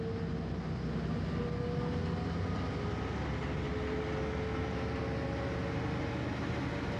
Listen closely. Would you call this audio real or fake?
real